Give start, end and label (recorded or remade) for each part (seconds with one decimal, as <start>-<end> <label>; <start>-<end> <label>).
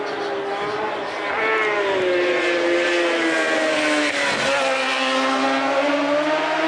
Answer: 0.0-6.7 recorded